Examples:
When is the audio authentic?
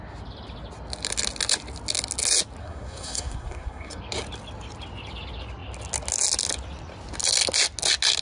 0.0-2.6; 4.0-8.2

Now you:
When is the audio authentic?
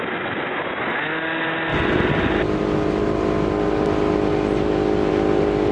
0.0-5.7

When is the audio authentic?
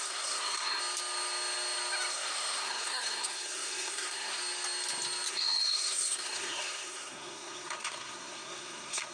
0.8-2.1; 4.4-5.3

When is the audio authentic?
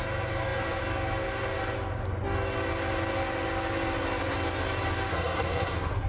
0.0-5.1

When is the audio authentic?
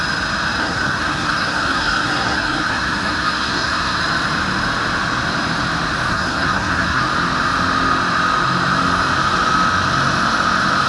0.0-0.6; 4.0-6.1; 7.0-10.9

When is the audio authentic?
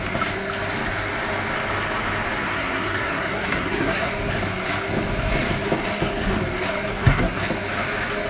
0.0-2.4; 4.1-6.9; 7.4-8.3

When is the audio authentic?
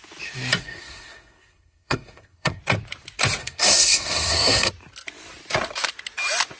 0.0-0.6; 2.6-3.4; 4.7-6.6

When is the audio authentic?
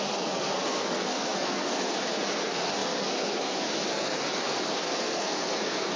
none